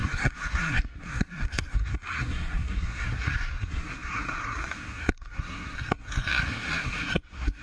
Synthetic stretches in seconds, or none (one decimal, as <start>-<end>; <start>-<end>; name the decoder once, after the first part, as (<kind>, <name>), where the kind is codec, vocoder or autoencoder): 0.0-7.6 (codec, SNAC)